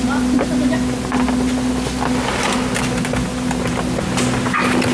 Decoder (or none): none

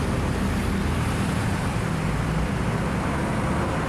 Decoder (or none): none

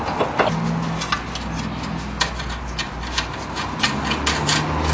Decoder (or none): none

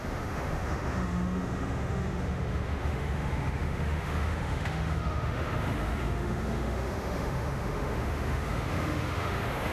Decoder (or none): autoencoder, DAC-VAE